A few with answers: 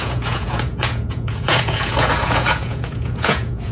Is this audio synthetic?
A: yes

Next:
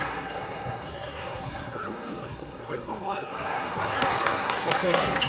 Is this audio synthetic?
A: yes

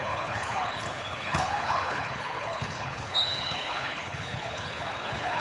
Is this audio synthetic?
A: yes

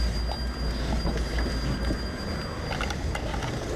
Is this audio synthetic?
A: no